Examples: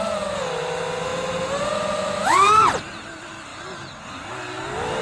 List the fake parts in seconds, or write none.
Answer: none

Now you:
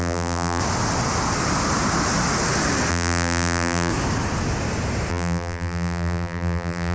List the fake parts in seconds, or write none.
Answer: 0.0-0.6 (vocoder, BigVGAN v2); 2.9-3.9; 5.1-6.9

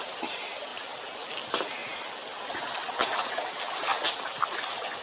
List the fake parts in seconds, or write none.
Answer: none

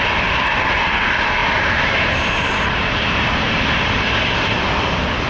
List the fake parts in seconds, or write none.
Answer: 1.4-4.6 (vocoder, BigVGAN v2)

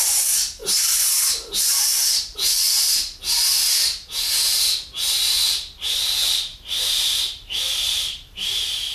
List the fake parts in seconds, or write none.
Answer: 6.5-8.9 (vocoder, BigVGAN v2)

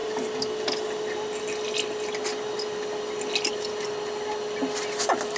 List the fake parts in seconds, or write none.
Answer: 0.0-1.4 (vocoder, BigVGAN v2); 2.3-3.9